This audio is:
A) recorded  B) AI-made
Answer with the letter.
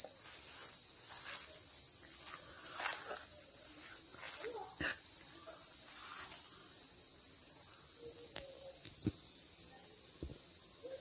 A